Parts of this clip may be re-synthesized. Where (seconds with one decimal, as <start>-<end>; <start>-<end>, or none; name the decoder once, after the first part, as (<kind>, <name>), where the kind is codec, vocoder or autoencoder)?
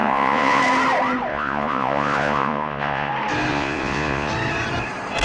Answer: 0.0-0.6 (vocoder, Vocos); 1.3-3.1; 3.5-4.3